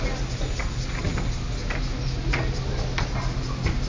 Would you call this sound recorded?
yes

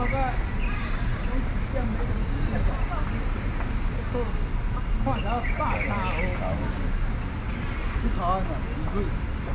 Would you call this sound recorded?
yes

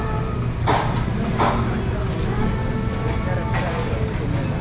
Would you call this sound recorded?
yes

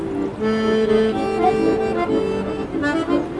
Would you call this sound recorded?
yes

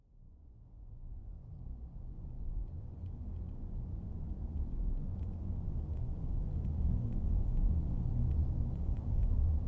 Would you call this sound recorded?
no